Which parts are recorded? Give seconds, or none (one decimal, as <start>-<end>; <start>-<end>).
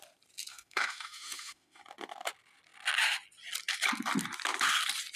0.0-0.5; 1.8-5.2